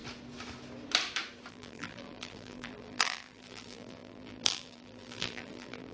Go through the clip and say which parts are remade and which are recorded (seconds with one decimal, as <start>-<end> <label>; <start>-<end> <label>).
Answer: 0.0-1.5 recorded; 1.5-5.9 remade